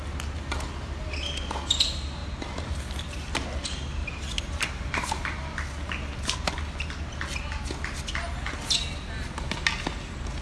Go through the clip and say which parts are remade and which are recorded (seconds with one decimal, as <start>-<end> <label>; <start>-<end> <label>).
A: 0.0-2.2 recorded; 2.2-2.8 remade; 2.8-4.0 recorded; 4.0-5.1 remade; 5.1-10.4 recorded